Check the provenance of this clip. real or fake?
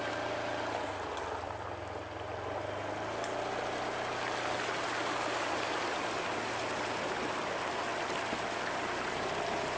real